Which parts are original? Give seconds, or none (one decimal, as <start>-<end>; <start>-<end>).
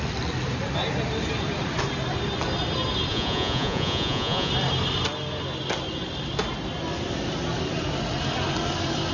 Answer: 0.0-3.1; 4.5-9.1